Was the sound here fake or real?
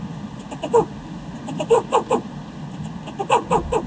real